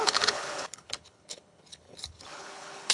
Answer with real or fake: fake